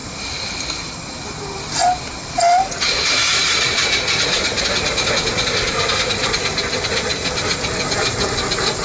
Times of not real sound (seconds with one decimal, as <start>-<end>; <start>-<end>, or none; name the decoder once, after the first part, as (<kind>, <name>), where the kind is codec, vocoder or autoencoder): none